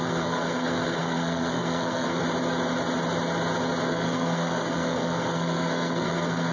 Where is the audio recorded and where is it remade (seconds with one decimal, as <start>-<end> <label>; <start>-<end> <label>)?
0.0-2.2 remade; 2.2-3.9 recorded; 3.9-6.5 remade